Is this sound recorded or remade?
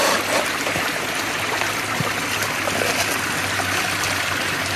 recorded